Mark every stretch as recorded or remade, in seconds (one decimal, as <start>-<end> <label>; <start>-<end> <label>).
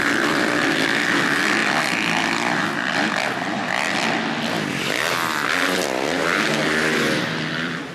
0.0-7.9 recorded